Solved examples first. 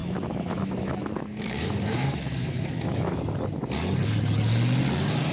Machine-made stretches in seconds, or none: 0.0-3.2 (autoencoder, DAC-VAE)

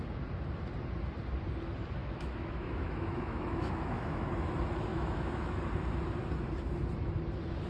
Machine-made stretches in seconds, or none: 2.0-4.3 (autoencoder, DAC-VAE); 4.9-5.6

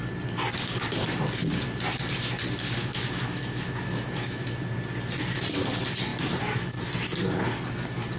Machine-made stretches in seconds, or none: 2.8-4.7 (autoencoder, DAC-VAE)

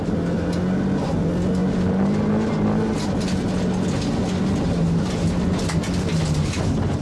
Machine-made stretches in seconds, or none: none

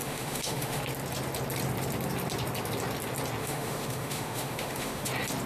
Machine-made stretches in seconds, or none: 0.0-0.8 (autoencoder, DAC-VAE); 3.4-5.1

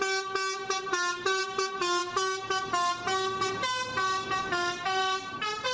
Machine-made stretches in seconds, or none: none

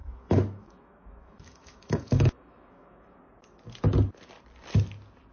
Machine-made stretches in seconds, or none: 0.0-3.2 (autoencoder, DAC-VAE)

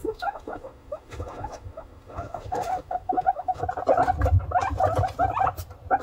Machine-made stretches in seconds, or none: 0.0-3.6 (autoencoder, DAC-VAE)